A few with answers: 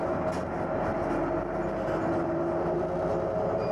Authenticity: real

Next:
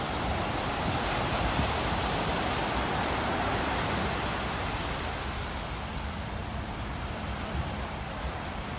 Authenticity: fake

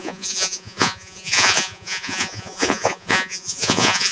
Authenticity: fake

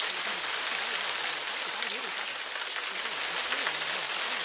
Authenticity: real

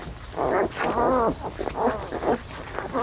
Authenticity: real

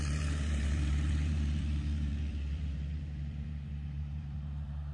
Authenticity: fake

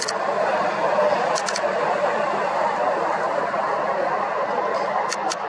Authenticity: real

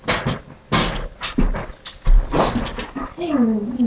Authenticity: real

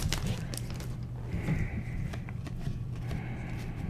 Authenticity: fake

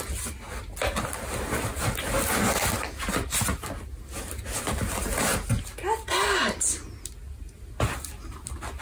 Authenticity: real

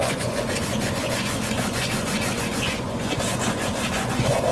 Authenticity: fake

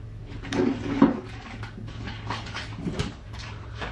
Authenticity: fake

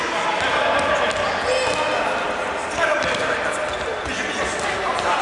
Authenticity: real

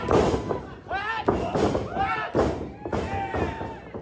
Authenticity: real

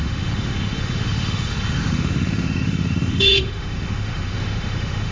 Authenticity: fake